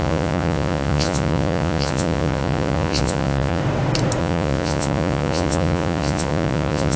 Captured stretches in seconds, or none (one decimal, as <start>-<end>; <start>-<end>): 3.6-4.2